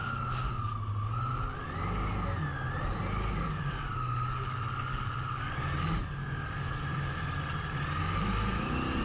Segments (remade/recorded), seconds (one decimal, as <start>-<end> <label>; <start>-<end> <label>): 0.0-9.0 recorded